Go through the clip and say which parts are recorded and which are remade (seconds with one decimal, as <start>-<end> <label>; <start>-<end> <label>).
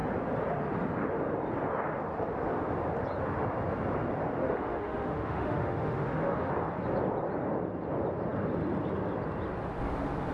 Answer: 0.0-4.4 recorded; 4.4-6.5 remade; 6.5-10.3 recorded